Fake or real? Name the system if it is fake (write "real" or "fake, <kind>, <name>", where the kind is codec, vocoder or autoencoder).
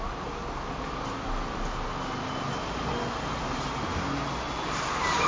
real